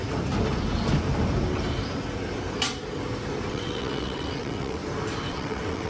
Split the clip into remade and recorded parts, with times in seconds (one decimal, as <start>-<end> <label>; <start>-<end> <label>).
0.0-3.5 recorded; 3.5-4.8 remade; 4.8-5.3 recorded; 5.3-5.9 remade